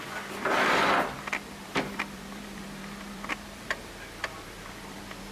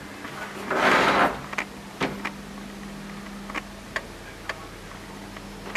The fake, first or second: first